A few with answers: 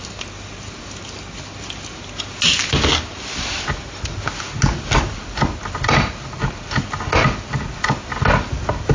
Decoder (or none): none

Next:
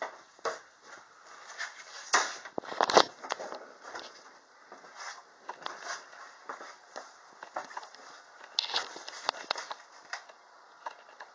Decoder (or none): none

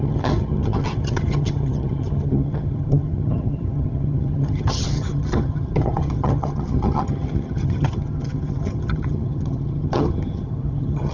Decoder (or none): vocoder, HiFi-GAN